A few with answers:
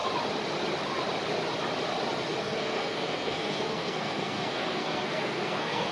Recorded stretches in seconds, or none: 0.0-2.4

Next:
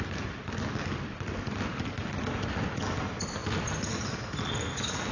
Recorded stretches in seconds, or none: 0.0-5.1

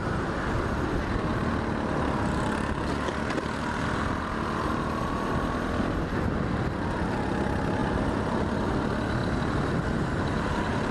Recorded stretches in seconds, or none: 0.0-9.2; 10.1-10.9

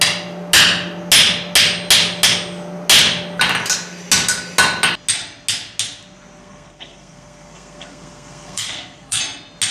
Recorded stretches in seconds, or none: 0.0-6.4; 9.2-9.7

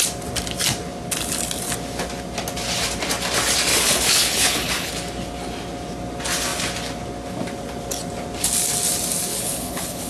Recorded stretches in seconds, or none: 0.0-3.7; 4.9-9.3